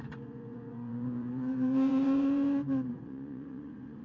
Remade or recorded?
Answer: remade